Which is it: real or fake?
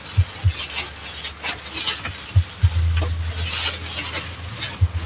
real